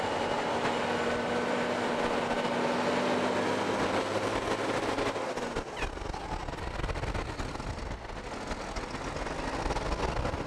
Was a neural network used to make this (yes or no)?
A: no